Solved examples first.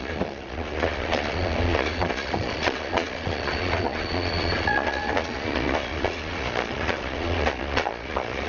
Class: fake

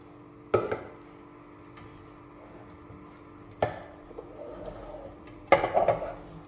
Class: real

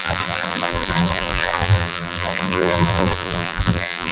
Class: fake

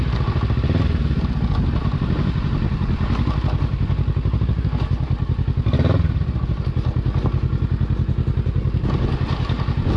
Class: real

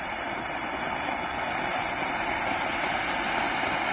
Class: real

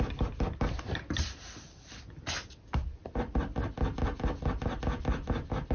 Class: real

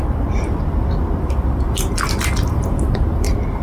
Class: fake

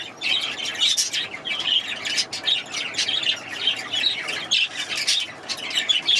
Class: real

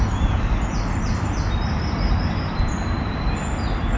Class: real